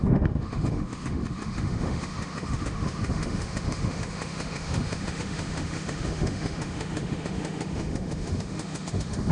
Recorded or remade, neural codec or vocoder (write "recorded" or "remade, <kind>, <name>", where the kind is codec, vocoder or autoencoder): remade, autoencoder, DAC-VAE